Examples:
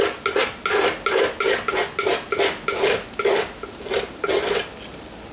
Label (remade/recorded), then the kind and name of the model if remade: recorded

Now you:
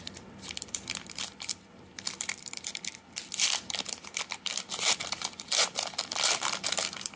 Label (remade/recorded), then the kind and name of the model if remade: remade, vocoder, BigVGAN v2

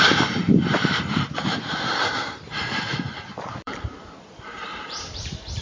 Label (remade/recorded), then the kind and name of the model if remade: remade, vocoder, BigVGAN v2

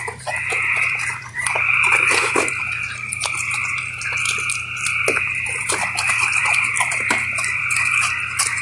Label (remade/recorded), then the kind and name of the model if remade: remade, vocoder, BigVGAN v2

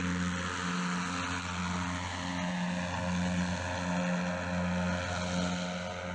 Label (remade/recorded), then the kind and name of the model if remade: recorded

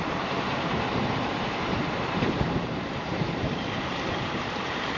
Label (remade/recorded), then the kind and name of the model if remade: remade, vocoder, BigVGAN v2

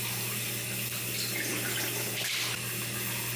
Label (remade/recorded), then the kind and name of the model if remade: recorded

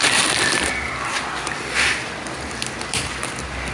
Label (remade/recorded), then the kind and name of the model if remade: remade, vocoder, BigVGAN v2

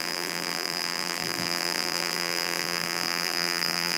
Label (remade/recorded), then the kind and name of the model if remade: remade, vocoder, BigVGAN v2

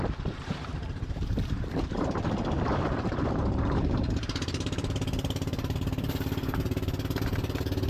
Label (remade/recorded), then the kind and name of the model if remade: remade, vocoder, BigVGAN v2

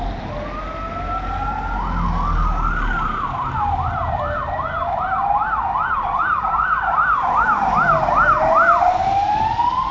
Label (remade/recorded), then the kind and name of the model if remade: recorded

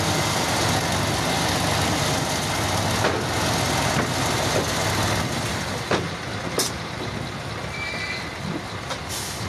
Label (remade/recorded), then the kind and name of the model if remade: recorded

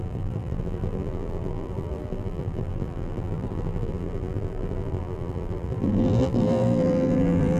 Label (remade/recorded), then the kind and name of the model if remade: remade, vocoder, BigVGAN v2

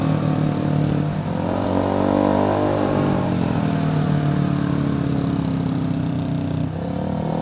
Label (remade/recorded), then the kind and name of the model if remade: recorded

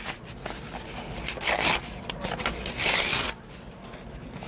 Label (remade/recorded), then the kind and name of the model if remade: recorded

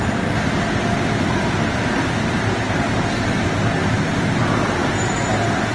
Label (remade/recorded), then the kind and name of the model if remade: recorded